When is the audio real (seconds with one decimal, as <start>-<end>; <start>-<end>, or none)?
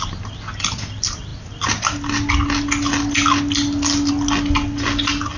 0.0-5.4